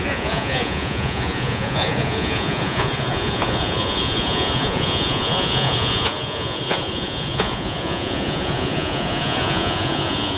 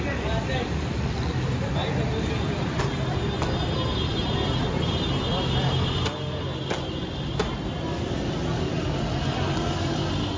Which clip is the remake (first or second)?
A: first